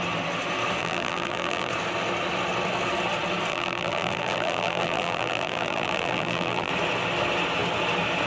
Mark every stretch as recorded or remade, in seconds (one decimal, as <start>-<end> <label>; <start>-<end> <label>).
0.0-0.8 recorded; 0.8-1.7 remade; 1.7-3.5 recorded; 3.5-6.7 remade; 6.7-8.3 recorded